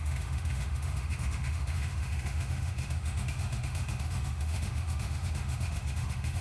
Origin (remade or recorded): remade